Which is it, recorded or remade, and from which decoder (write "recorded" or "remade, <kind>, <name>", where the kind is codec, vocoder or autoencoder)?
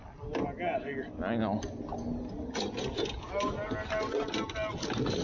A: recorded